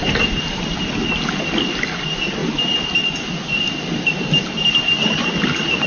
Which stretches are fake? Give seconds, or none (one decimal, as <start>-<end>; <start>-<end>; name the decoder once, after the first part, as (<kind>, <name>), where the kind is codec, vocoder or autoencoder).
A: none